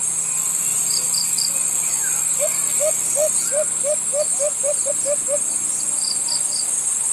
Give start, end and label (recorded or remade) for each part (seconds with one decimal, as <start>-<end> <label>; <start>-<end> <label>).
0.0-0.7 recorded; 0.7-4.9 remade; 4.9-7.1 recorded